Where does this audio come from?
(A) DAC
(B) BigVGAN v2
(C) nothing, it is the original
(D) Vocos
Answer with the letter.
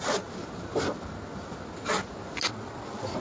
C